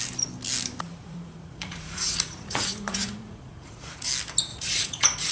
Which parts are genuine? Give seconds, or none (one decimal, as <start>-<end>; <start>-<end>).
0.0-0.9; 4.1-4.5